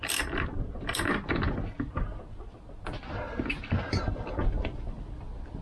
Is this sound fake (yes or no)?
no